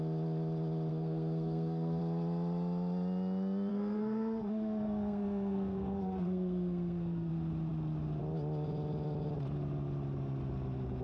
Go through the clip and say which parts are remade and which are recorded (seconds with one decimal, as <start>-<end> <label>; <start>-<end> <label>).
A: 0.0-0.9 recorded; 0.9-2.0 remade; 2.0-3.7 recorded; 3.7-7.3 remade; 7.3-11.0 recorded